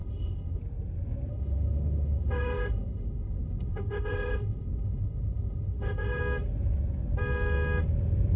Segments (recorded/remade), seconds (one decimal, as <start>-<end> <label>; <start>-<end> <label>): 0.0-0.6 remade; 0.6-1.3 recorded; 1.3-6.2 remade; 6.2-8.4 recorded